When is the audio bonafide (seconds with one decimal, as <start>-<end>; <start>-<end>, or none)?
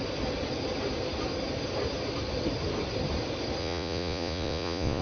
0.0-3.6